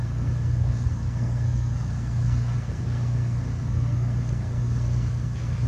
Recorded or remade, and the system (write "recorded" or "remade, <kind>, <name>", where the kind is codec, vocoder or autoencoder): remade, codec, SNAC